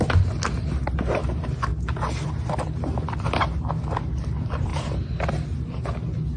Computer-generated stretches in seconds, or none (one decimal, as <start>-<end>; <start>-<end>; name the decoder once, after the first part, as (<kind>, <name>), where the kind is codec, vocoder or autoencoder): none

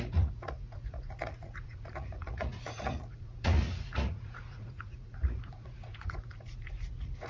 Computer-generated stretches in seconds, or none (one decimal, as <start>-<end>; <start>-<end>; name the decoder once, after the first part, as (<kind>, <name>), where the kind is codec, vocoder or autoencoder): 0.0-7.3 (vocoder, Vocos)

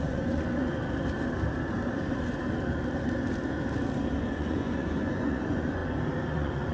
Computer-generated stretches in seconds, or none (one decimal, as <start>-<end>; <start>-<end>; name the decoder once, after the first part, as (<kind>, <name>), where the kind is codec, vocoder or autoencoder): 0.0-0.8 (vocoder, Vocos); 4.3-5.8; 6.3-6.7

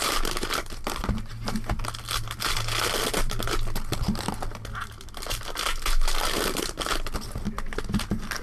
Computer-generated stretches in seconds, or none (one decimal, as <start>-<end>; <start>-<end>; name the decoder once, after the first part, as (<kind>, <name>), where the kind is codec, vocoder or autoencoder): none

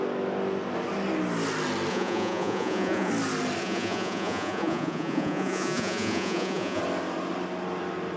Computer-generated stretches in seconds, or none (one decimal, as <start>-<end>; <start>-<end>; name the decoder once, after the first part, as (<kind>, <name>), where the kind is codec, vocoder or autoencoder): 1.9-3.1 (vocoder, Vocos); 3.6-6.8